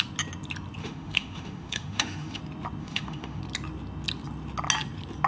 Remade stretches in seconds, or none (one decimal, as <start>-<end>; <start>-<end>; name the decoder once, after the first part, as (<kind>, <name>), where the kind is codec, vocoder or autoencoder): 0.8-2.4 (autoencoder, DAC-VAE); 2.8-3.4